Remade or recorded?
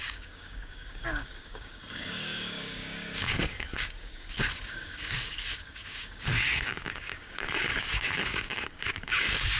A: remade